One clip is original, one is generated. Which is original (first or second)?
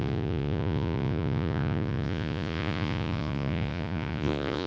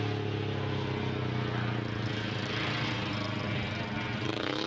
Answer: second